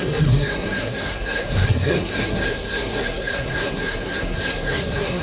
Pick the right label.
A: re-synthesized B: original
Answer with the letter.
A